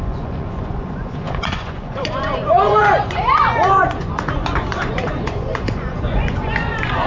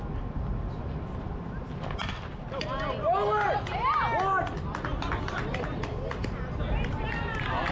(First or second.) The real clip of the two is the second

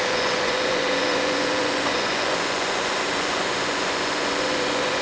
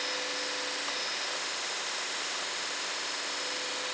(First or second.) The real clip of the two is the second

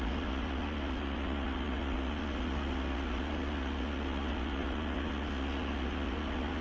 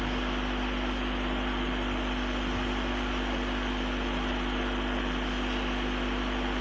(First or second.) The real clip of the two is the second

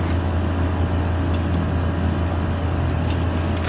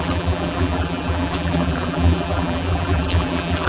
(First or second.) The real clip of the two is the first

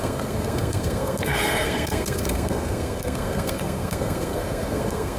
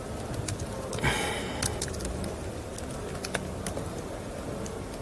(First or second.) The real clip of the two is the second